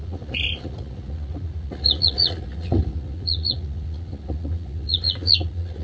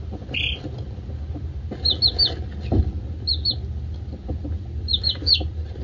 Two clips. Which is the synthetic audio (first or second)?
first